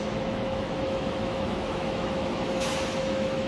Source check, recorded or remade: remade